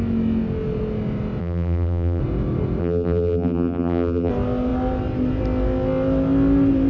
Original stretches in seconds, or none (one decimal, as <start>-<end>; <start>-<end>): 0.0-1.4; 2.2-2.8; 4.3-6.9